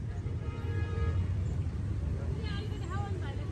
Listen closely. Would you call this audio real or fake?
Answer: fake